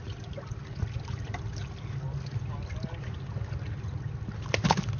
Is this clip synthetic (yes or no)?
no